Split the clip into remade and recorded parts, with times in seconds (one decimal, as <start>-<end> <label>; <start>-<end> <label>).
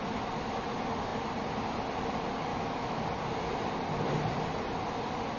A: 0.0-2.5 recorded; 2.5-3.0 remade; 3.0-5.4 recorded